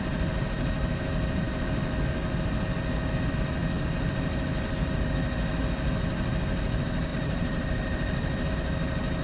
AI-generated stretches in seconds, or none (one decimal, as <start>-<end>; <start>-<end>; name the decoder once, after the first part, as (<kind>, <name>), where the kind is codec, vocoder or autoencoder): 7.1-8.5 (vocoder, BigVGAN v2)